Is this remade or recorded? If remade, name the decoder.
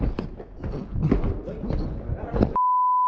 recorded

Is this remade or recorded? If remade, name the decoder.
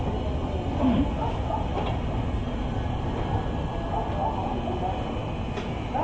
recorded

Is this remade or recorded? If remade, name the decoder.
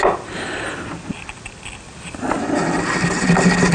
recorded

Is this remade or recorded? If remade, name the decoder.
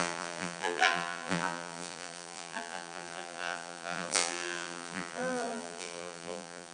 remade, vocoder, BigVGAN v2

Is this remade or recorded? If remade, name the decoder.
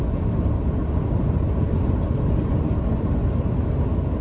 recorded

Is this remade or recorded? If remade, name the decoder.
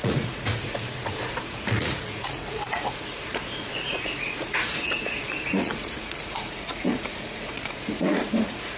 remade, vocoder, Vocos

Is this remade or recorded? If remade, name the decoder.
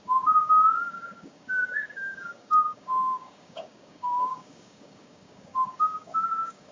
remade, codec, DAC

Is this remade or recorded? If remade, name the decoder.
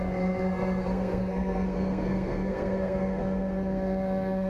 remade, codec, SNAC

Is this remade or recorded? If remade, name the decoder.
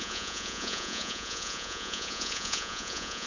remade, vocoder, Vocos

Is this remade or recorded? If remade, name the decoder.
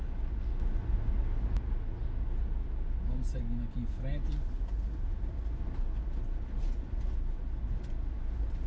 recorded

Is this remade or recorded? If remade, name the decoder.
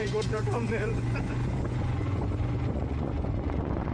remade, vocoder, Vocos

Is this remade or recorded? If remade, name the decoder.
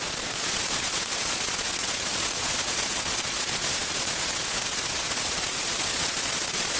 remade, vocoder, Vocos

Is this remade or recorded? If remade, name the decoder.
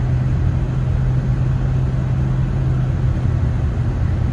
recorded